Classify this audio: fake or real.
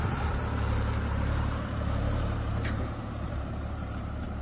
fake